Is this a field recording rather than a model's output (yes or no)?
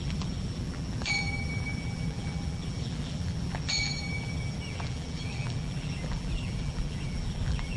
no